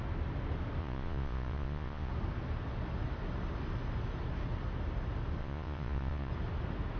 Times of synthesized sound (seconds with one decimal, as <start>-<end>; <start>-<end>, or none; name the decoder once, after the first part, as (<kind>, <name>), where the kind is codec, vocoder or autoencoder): 0.8-2.1 (vocoder, Vocos); 5.4-6.3